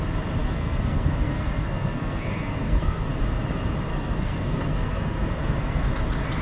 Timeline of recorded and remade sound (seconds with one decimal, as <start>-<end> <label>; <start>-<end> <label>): 0.0-0.4 recorded; 0.4-3.1 remade; 3.1-3.9 recorded; 3.9-5.9 remade; 5.9-6.4 recorded